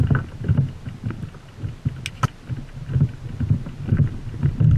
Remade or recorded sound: recorded